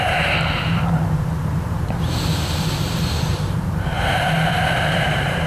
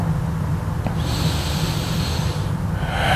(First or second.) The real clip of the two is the second